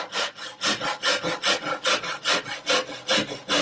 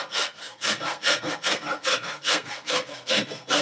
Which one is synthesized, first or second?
second